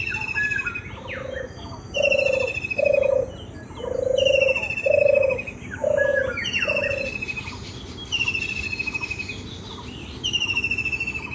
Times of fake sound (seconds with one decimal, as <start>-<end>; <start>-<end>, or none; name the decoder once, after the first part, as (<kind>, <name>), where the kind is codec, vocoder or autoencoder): none